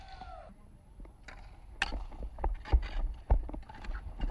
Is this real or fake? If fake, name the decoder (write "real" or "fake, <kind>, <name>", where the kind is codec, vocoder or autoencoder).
real